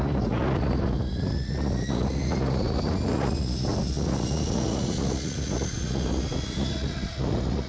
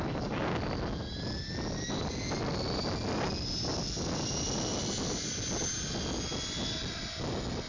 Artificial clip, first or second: first